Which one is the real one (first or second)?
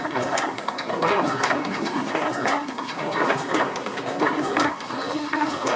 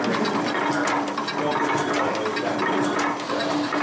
second